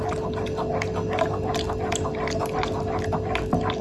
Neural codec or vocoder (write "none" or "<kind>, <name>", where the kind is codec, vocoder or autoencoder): none